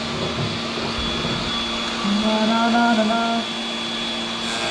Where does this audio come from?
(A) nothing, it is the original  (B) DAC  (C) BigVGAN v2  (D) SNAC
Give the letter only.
A